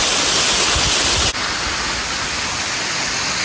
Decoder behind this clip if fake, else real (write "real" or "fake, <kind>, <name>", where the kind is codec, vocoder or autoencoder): real